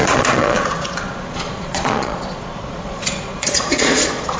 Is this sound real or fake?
fake